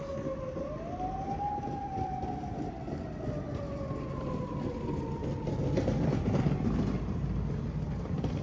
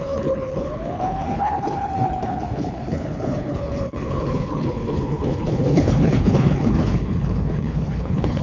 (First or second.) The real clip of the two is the first